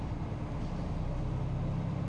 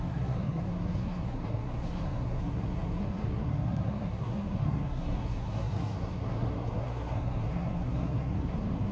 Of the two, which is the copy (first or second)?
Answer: second